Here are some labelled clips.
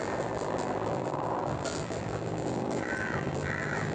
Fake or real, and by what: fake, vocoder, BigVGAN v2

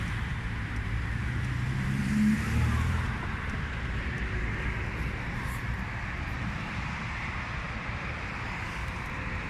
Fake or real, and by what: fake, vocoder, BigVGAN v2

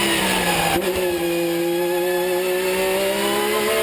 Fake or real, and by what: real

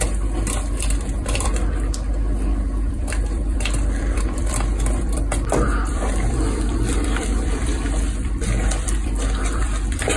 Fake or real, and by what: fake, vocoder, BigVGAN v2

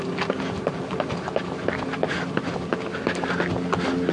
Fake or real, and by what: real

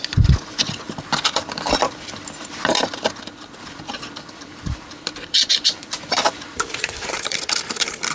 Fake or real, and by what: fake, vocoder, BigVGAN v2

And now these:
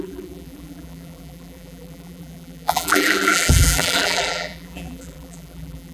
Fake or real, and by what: fake, vocoder, BigVGAN v2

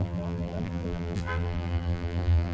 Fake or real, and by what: fake, vocoder, BigVGAN v2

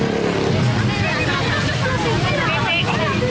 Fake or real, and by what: real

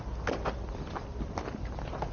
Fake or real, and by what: real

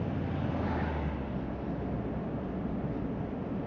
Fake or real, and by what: real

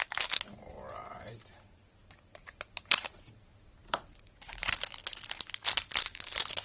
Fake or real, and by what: fake, vocoder, BigVGAN v2